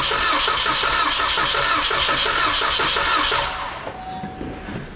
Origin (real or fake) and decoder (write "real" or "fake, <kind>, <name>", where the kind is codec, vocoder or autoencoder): real